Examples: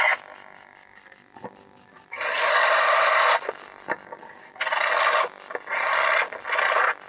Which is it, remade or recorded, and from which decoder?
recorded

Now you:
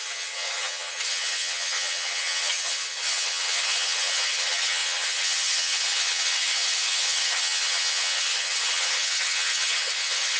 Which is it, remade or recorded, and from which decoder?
remade, vocoder, HiFi-GAN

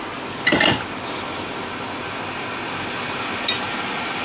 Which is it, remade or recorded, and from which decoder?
recorded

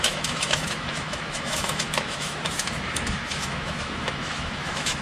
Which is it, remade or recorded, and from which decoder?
remade, autoencoder, DAC-VAE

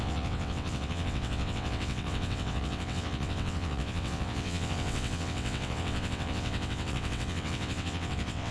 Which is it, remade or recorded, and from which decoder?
remade, vocoder, WaveNeXt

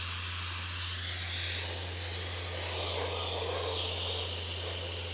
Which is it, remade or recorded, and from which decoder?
recorded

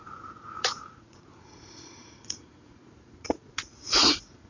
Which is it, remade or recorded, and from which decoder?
remade, vocoder, Vocos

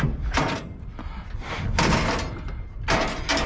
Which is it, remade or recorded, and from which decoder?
recorded